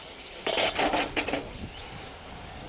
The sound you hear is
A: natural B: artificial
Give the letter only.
A